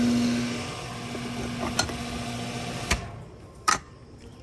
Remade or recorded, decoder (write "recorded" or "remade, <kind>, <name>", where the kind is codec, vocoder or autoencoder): recorded